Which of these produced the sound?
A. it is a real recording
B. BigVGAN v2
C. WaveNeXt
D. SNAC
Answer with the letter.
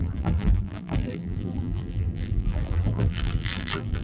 B